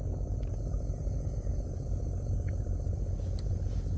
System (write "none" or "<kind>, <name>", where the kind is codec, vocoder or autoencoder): none